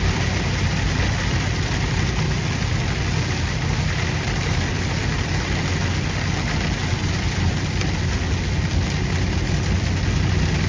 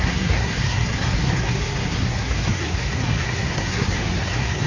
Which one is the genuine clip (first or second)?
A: first